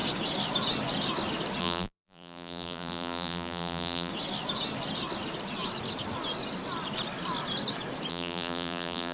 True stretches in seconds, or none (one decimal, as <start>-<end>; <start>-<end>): 0.0-1.6; 4.1-8.1